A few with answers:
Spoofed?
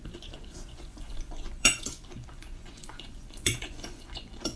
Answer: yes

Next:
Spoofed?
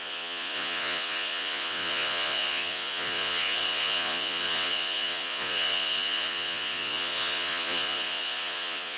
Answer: yes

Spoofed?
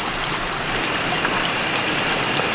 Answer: no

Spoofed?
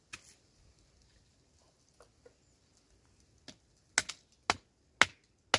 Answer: no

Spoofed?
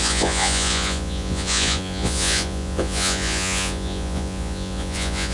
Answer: yes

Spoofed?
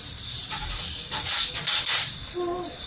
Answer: no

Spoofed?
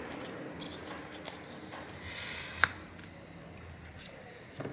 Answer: no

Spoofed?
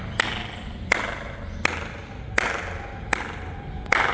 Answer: no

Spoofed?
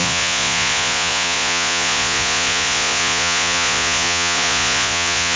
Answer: yes